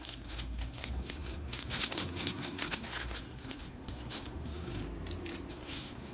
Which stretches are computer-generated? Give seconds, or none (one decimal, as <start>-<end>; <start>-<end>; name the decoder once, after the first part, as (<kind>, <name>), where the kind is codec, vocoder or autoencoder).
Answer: 0.0-4.8 (codec, SNAC); 5.5-6.1